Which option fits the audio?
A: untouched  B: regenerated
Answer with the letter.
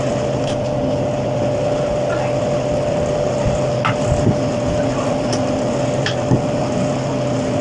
A